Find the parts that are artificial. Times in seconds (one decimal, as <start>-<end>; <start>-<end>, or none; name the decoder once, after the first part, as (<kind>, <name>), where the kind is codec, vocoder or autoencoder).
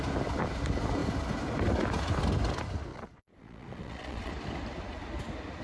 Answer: 2.9-4.3 (vocoder, Vocos)